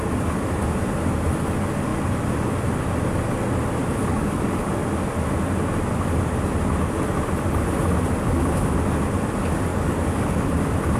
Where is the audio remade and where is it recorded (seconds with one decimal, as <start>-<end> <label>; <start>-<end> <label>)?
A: 0.0-4.1 recorded; 4.1-4.8 remade; 4.8-9.7 recorded; 9.7-10.5 remade; 10.5-11.0 recorded